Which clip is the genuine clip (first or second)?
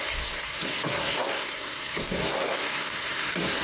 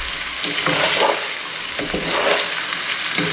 second